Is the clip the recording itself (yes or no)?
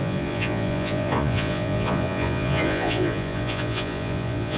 no